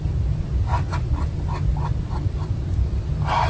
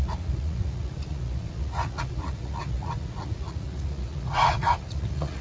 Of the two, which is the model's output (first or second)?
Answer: second